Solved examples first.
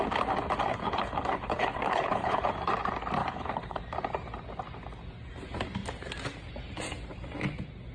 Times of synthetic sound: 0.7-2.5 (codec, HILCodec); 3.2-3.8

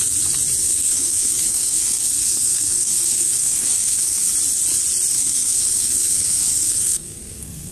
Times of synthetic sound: 0.6-4.3 (codec, SNAC); 5.1-7.7

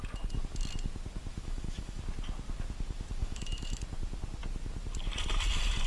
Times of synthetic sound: 1.3-2.0 (autoencoder, DAC-VAE); 3.2-3.8

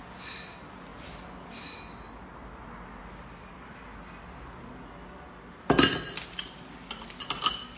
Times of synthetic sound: none

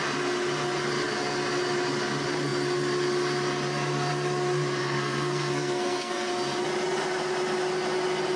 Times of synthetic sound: 4.8-6.3 (codec, SNAC)

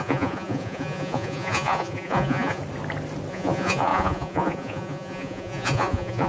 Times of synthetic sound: 0.0-2.6 (vocoder, Vocos); 3.3-6.3

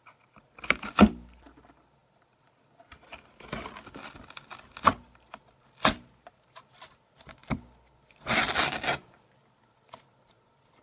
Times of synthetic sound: none

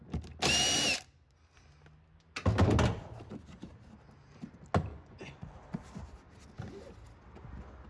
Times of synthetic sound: 4.9-5.5 (vocoder, Vocos)